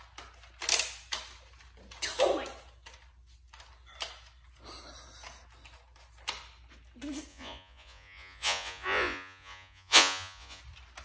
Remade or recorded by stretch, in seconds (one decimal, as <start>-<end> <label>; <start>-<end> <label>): 0.0-7.3 recorded; 7.3-10.6 remade; 10.6-11.0 recorded